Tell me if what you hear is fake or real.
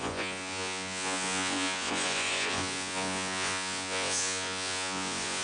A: fake